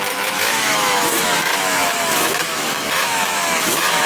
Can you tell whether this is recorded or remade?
remade